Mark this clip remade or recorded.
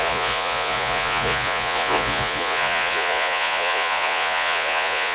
remade